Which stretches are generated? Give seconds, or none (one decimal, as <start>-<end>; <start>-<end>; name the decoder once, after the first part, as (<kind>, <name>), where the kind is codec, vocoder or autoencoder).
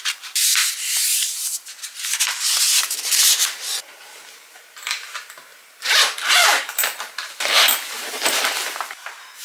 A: 0.0-0.6 (vocoder, BigVGAN v2); 2.8-9.4